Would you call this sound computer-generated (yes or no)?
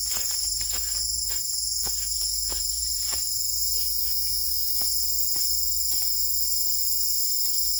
yes